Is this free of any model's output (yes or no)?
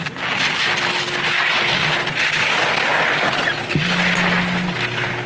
yes